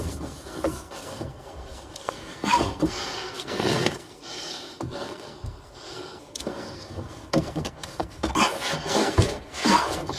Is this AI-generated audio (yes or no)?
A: yes